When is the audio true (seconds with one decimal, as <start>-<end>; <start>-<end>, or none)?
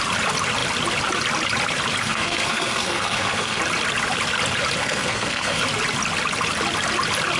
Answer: 0.0-2.0; 3.6-4.8; 5.6-7.4